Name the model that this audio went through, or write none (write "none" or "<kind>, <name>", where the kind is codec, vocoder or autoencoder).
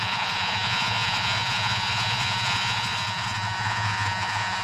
vocoder, Vocos